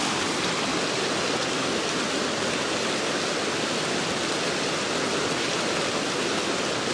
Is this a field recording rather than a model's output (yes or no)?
yes